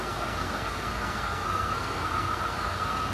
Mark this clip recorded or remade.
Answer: remade